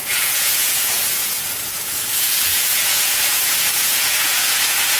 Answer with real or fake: fake